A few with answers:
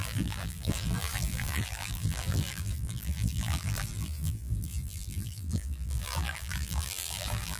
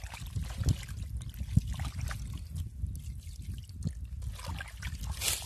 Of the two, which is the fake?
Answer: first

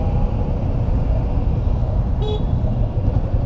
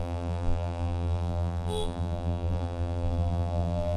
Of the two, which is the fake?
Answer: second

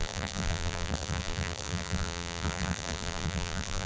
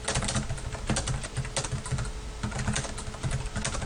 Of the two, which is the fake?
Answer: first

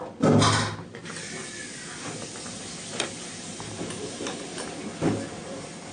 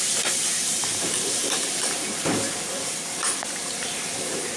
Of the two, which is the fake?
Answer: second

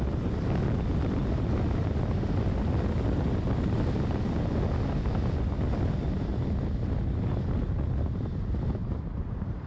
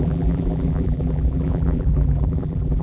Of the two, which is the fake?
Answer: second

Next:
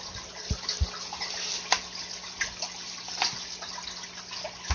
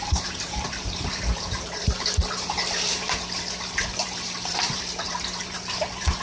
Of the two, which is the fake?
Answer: second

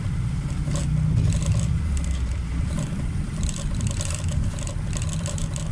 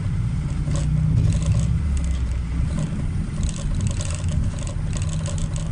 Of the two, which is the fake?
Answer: first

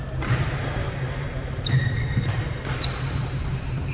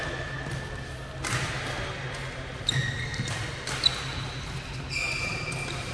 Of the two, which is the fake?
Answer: first